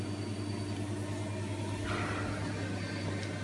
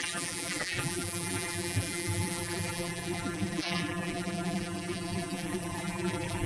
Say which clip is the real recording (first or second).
first